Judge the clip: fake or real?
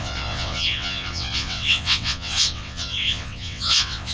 fake